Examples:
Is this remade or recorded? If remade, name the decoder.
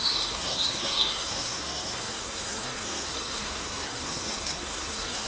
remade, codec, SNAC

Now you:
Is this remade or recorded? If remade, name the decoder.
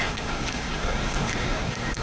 remade, codec, SNAC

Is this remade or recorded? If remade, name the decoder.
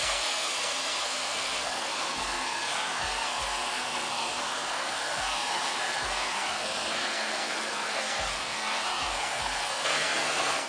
remade, codec, SNAC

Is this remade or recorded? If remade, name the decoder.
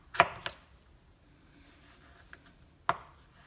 recorded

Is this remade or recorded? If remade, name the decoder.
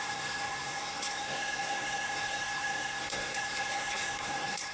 remade, codec, SNAC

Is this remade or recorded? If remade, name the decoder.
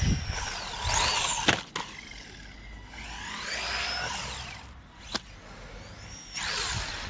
recorded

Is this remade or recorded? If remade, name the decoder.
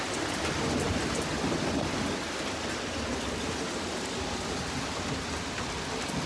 recorded